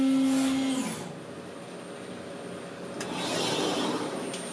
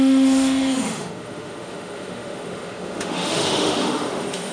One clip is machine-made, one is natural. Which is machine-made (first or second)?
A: second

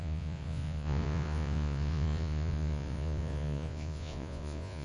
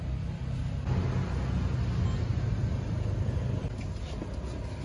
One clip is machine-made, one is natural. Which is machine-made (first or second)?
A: first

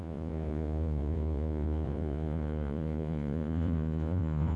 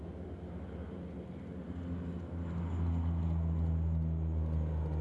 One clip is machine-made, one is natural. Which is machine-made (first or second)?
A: first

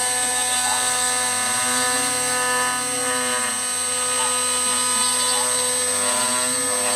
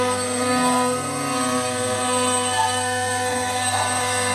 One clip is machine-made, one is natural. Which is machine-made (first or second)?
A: second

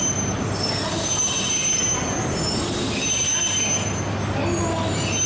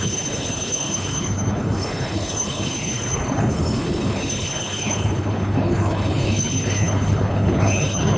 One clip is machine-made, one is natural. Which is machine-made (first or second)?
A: second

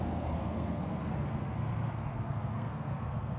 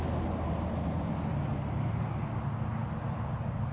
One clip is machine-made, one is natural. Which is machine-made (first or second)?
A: first